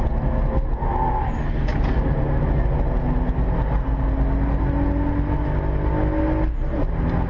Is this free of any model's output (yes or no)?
yes